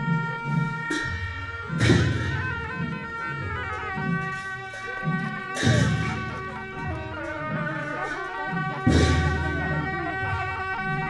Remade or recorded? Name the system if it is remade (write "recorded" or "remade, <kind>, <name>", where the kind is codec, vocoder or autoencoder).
recorded